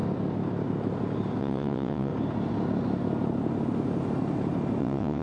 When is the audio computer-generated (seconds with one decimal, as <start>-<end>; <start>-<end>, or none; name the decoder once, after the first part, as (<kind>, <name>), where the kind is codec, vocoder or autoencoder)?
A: 1.4-2.1 (vocoder, WaveNeXt); 4.8-5.2